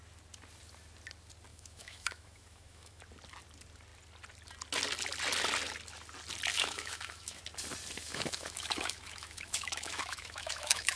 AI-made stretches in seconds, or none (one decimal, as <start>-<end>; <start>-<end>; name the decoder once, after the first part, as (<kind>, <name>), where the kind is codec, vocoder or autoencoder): 1.5-3.0 (autoencoder, DAC-VAE); 6.5-7.4; 8.0-11.0